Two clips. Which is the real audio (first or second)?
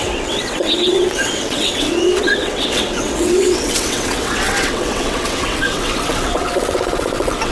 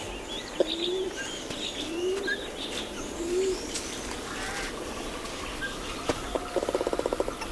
second